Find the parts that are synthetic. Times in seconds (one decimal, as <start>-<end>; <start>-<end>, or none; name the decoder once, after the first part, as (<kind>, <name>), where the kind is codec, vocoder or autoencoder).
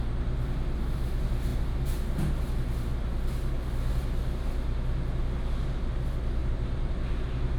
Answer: 6.4-6.9 (vocoder, BigVGAN v2)